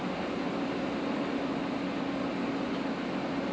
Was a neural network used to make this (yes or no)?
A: no